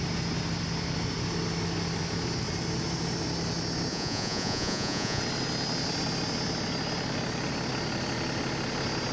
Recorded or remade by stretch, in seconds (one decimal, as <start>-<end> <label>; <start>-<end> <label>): 0.0-3.9 recorded; 3.9-5.2 remade; 5.2-9.1 recorded